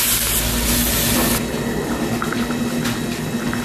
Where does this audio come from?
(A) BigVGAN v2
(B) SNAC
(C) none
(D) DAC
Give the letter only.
C